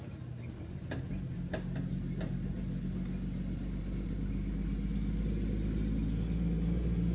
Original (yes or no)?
yes